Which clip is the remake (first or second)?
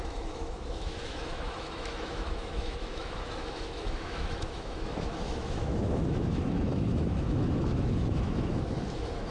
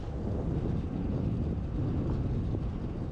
first